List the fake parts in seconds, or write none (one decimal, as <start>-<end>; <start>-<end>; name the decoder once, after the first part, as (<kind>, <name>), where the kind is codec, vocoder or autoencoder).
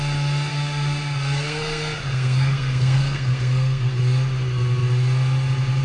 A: 0.5-4.0 (codec, SNAC)